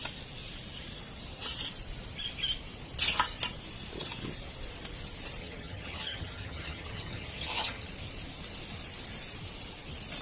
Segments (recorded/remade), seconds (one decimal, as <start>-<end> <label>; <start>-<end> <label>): 0.0-5.4 recorded; 5.4-7.9 remade; 7.9-10.2 recorded